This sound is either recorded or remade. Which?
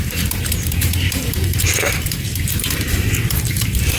remade